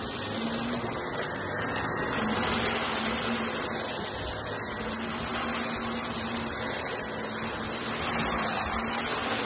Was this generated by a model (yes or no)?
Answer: no